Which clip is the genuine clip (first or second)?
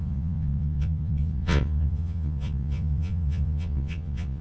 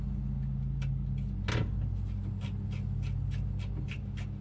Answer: second